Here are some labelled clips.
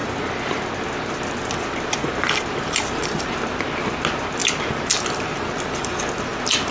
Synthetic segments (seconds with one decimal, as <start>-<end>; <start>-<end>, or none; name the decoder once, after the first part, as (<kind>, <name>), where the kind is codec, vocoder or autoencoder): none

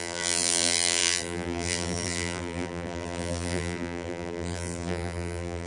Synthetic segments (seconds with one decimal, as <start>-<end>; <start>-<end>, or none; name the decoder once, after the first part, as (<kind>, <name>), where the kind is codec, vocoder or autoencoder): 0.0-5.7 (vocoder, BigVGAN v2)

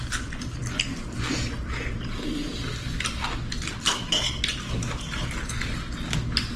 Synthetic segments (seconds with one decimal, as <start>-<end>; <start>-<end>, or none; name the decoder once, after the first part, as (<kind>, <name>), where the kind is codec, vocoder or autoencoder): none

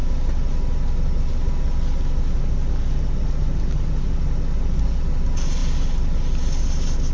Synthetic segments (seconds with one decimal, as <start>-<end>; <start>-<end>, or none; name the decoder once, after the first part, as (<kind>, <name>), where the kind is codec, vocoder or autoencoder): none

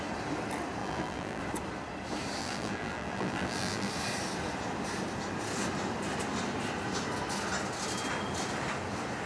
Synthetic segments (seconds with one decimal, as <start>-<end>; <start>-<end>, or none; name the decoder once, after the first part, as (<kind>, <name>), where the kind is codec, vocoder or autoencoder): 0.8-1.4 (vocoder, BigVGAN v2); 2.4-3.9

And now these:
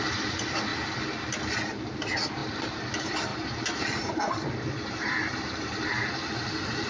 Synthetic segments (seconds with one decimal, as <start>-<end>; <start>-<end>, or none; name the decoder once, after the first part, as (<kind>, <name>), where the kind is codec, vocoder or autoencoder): 0.0-0.7 (vocoder, BigVGAN v2); 2.0-6.9